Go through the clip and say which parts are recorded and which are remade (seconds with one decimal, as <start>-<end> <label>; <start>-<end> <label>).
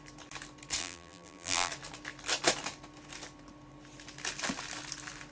0.0-0.8 recorded; 0.8-1.7 remade; 1.7-5.3 recorded